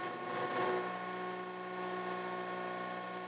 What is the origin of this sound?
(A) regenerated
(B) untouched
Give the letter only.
B